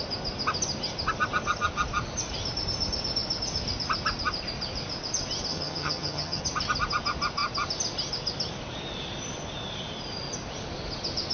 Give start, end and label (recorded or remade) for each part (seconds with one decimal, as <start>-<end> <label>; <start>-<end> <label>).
0.0-5.5 recorded; 5.5-6.4 remade; 6.4-11.3 recorded